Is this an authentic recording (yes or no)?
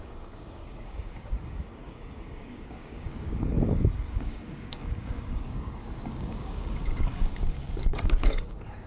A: no